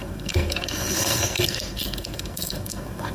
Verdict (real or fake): fake